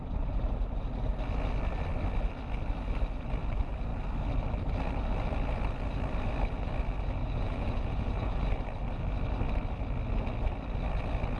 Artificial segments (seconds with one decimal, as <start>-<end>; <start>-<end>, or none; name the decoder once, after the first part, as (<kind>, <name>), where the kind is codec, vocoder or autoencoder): 7.2-8.4 (vocoder, Vocos)